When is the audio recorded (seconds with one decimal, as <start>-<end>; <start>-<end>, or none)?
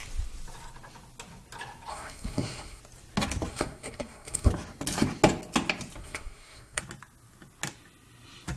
0.0-1.9; 2.8-3.5; 4.5-6.0; 6.8-8.6